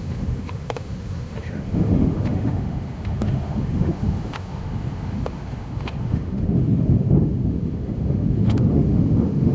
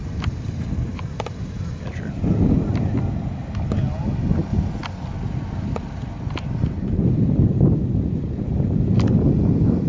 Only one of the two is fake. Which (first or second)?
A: first